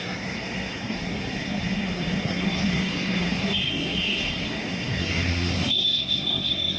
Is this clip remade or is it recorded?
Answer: remade